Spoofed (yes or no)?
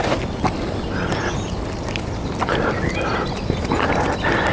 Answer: no